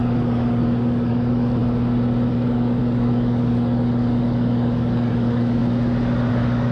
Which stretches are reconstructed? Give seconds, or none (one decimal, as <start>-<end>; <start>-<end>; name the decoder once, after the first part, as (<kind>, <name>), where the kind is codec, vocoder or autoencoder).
0.0-1.6 (codec, DAC); 2.3-5.6; 6.3-6.7